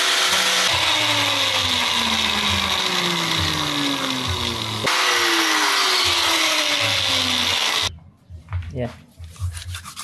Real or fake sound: real